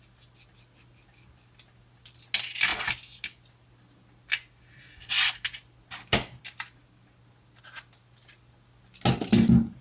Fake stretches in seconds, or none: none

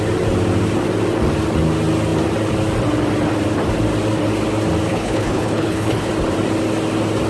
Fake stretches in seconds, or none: 4.9-6.1 (codec, HILCodec)

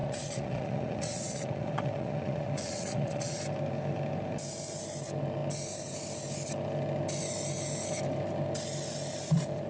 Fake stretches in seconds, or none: 0.0-3.4 (vocoder, Vocos)

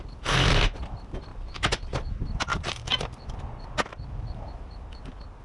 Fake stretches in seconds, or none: 1.3-1.9 (vocoder, BigVGAN v2); 2.5-4.5